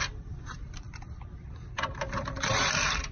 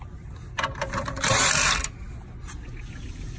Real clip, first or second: second